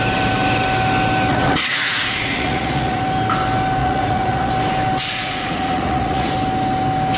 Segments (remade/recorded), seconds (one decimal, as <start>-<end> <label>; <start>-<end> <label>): 0.0-1.3 recorded; 1.3-3.0 remade; 3.0-3.8 recorded; 3.8-4.5 remade; 4.5-5.2 recorded; 5.2-6.3 remade; 6.3-7.2 recorded